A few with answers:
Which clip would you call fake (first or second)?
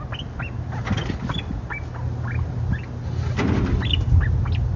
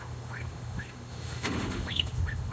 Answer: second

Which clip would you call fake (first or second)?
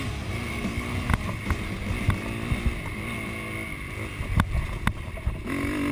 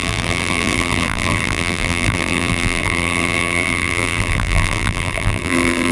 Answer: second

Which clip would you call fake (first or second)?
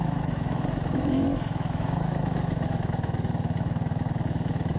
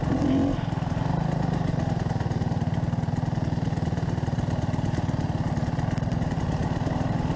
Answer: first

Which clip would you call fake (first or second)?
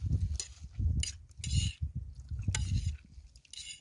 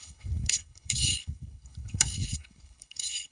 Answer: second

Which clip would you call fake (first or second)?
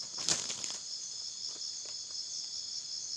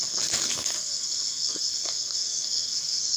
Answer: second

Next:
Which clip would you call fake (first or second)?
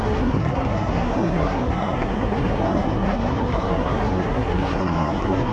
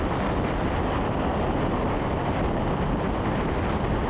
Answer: first